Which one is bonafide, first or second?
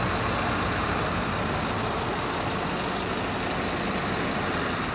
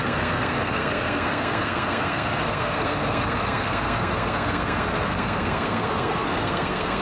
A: first